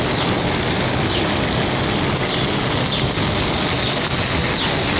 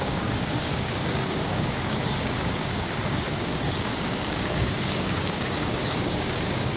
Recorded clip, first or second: first